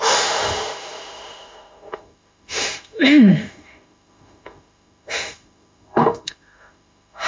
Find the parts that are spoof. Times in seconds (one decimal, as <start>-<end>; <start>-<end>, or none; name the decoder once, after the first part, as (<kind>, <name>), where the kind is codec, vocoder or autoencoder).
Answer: 0.0-7.3 (autoencoder, DAC-VAE)